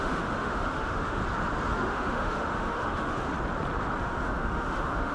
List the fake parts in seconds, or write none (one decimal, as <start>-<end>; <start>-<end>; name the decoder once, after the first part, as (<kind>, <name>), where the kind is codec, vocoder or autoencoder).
0.0-1.2 (autoencoder, DAC-VAE); 1.7-3.3; 4.0-5.1